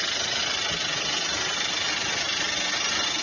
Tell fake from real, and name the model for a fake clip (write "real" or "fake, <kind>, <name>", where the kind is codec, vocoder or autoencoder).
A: real